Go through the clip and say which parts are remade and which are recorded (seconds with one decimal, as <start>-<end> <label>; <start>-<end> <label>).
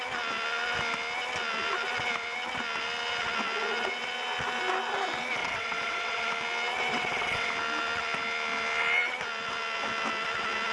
0.0-5.4 recorded; 5.4-6.2 remade; 6.2-6.9 recorded; 6.9-7.5 remade; 7.5-10.7 recorded